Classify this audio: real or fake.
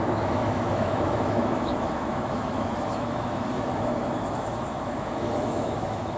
fake